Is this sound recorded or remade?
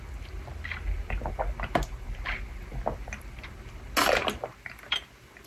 recorded